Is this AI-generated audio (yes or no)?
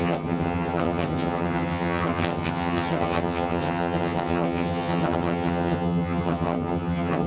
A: yes